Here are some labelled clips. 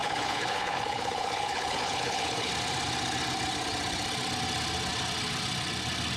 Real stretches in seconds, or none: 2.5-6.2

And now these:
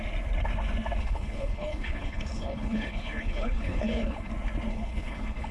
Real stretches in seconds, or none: 0.0-1.0; 4.3-4.7

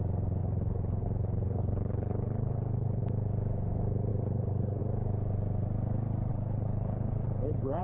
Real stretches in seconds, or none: 0.0-0.4; 3.0-4.1; 4.8-6.3

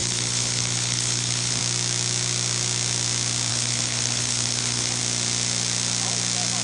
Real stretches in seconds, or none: 1.6-3.5; 5.0-6.6

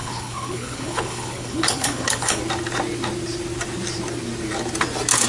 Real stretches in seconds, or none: 2.4-5.3

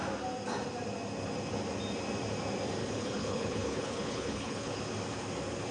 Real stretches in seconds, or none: 0.0-2.8; 4.8-5.7

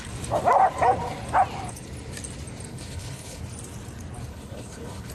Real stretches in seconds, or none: 0.0-2.7; 3.4-4.3